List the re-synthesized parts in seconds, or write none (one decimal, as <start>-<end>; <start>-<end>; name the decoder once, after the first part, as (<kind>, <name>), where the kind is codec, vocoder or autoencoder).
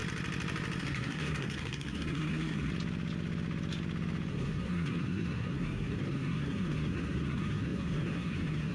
0.8-2.7 (codec, SNAC); 4.3-8.7